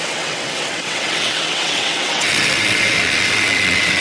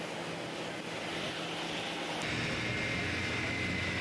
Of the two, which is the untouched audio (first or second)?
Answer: second